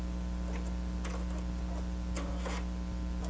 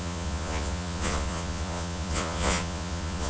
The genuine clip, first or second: first